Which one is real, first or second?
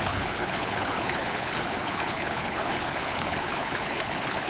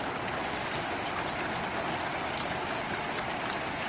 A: second